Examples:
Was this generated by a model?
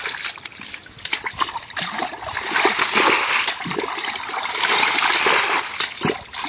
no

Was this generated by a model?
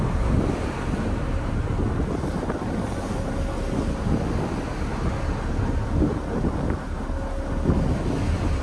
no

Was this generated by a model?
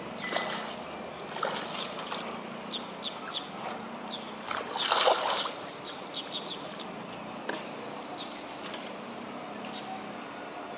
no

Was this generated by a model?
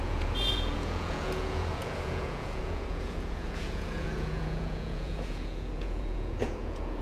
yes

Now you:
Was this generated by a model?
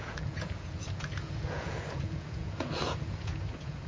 yes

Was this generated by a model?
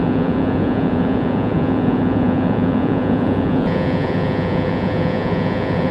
yes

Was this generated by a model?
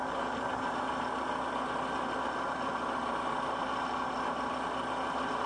no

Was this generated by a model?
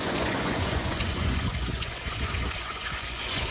yes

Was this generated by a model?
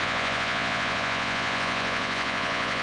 yes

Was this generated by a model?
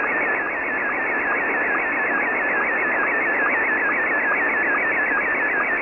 no